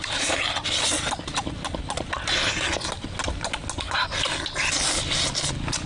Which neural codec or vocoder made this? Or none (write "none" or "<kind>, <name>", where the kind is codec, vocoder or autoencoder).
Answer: none